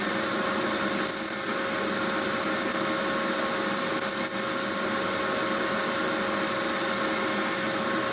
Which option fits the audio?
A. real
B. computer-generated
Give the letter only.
A